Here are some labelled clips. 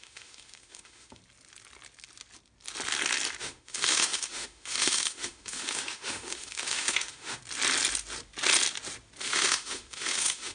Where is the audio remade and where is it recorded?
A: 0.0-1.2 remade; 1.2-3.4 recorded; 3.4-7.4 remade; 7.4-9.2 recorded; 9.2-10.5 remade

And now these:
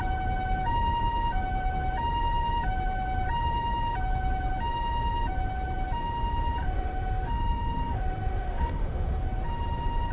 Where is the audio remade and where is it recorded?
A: 0.0-6.6 recorded; 6.6-9.2 remade; 9.2-10.1 recorded

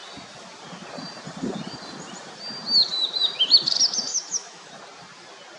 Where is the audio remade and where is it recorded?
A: 0.0-4.1 recorded; 4.1-4.7 remade; 4.7-5.6 recorded

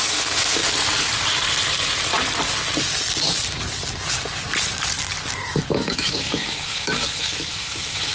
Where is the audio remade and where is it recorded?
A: 0.0-0.6 remade; 0.6-5.3 recorded; 5.3-8.1 remade

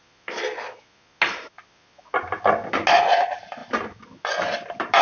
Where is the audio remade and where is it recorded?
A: 0.0-5.0 recorded